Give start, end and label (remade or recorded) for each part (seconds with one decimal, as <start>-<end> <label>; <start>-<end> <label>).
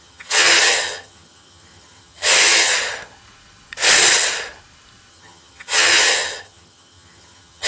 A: 0.0-2.7 remade; 2.7-5.1 recorded; 5.1-7.7 remade